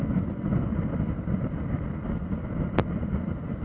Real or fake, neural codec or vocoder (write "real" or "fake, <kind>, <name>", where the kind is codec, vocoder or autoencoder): real